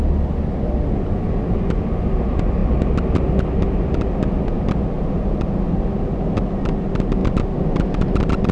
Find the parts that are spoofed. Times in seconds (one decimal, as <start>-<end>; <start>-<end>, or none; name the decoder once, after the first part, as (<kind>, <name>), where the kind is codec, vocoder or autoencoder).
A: none